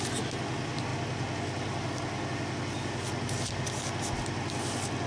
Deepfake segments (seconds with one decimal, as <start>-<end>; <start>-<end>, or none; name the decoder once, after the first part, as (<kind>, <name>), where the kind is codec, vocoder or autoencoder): none